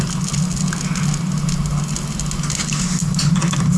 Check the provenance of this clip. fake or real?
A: real